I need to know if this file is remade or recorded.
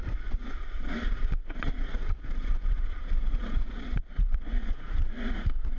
remade